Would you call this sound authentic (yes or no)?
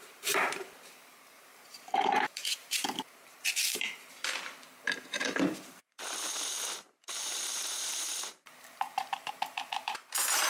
no